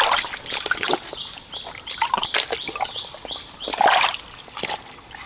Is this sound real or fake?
real